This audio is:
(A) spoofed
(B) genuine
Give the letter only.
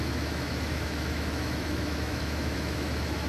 A